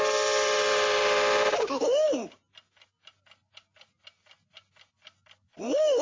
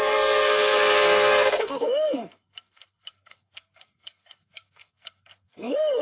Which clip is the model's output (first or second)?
second